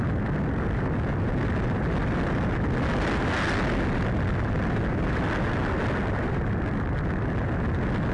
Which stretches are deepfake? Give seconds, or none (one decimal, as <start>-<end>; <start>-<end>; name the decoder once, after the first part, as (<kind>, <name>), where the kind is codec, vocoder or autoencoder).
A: none